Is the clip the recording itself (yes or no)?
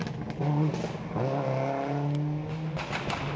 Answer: yes